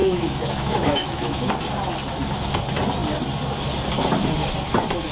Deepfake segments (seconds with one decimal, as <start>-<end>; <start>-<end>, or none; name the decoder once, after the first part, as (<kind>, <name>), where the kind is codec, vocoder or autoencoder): 0.0-1.5 (autoencoder, DAC-VAE)